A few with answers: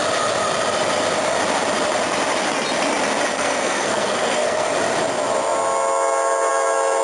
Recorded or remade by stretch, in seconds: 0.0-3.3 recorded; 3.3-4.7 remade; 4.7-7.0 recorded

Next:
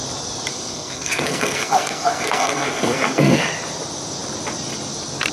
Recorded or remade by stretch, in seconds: 0.0-0.5 recorded; 0.5-3.4 remade; 3.4-5.3 recorded

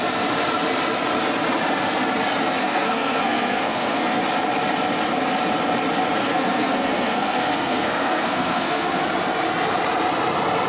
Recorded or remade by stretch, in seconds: 0.0-2.6 recorded; 2.6-4.2 remade; 4.2-6.2 recorded; 6.2-9.0 remade; 9.0-10.7 recorded

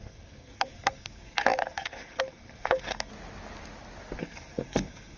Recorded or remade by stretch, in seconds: 0.0-3.1 remade; 3.1-4.2 recorded; 4.2-5.2 remade

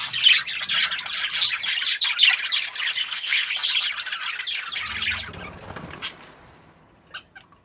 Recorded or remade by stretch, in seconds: 0.0-3.0 recorded; 3.0-3.5 remade; 3.5-7.6 recorded

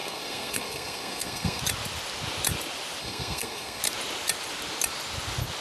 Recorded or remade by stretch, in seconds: 0.0-1.6 remade; 1.6-3.0 recorded; 3.0-3.8 remade; 3.8-5.6 recorded

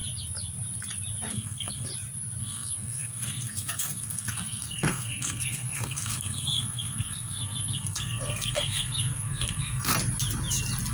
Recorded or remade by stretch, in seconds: 0.0-1.3 recorded; 1.3-1.9 remade; 1.9-2.4 recorded; 2.4-9.9 remade; 9.9-10.9 recorded

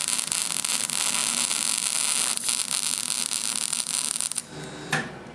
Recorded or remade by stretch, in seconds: 0.0-5.3 recorded